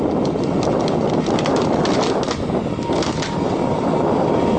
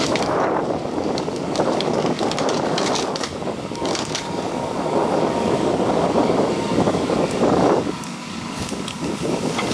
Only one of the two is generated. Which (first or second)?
second